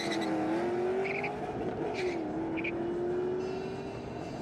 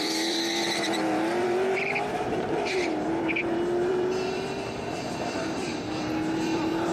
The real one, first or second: first